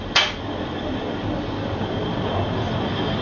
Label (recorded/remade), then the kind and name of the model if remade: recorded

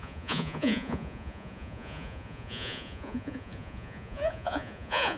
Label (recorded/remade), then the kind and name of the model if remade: remade, vocoder, Vocos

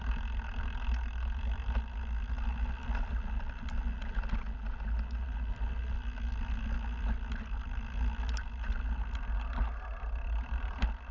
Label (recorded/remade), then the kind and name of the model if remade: recorded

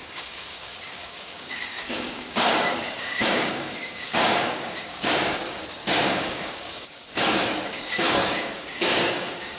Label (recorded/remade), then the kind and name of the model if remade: remade, codec, DAC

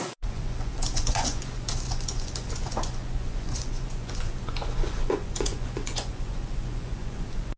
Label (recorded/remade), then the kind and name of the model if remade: remade, vocoder, Vocos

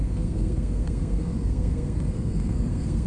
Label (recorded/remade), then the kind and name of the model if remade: remade, codec, SNAC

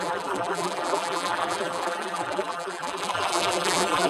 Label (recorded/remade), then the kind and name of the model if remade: remade, vocoder, BigVGAN v2